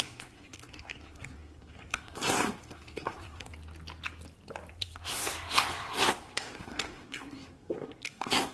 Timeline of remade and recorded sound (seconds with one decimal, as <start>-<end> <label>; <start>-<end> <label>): 0.0-3.5 remade; 3.5-4.7 recorded; 4.7-8.5 remade